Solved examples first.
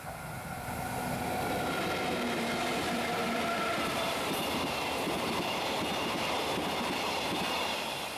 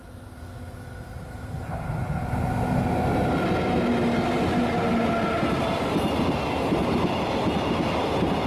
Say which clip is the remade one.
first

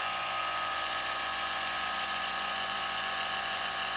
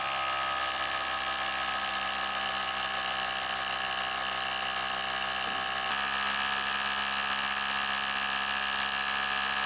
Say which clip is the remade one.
first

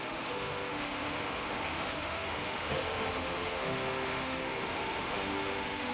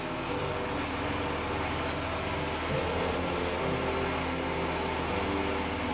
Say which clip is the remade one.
first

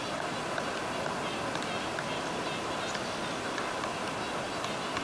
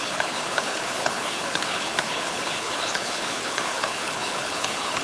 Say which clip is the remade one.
second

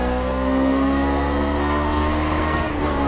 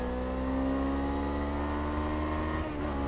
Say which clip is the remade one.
first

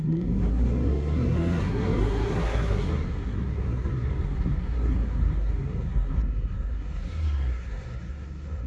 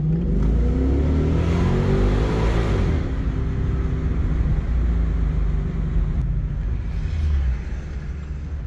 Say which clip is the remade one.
first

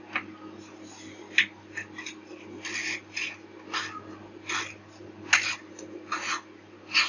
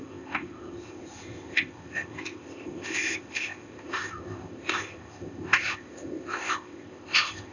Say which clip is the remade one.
second